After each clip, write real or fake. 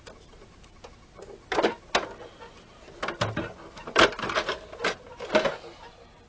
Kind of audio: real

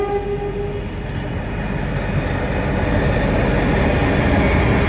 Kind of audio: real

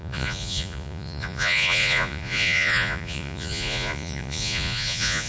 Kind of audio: fake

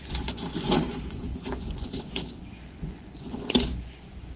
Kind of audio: fake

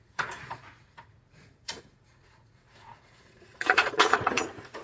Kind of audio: fake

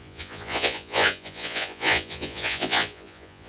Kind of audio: fake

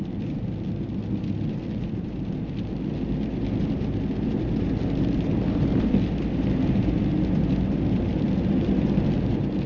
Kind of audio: real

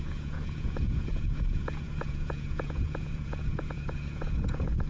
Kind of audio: fake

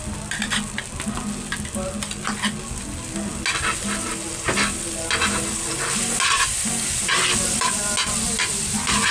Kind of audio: real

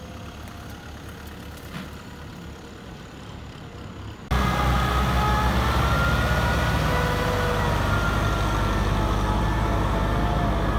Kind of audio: real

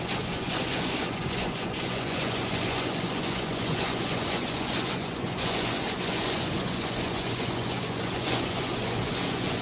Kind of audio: fake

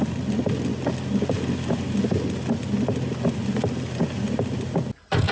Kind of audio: real